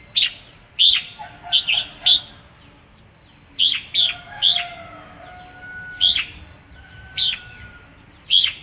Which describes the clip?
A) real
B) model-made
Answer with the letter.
A